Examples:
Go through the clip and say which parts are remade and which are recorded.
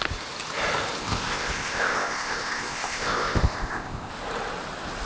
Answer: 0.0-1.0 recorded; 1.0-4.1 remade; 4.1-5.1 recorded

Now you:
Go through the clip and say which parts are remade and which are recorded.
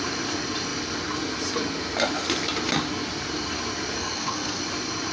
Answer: 0.0-4.0 recorded; 4.0-4.6 remade; 4.6-5.1 recorded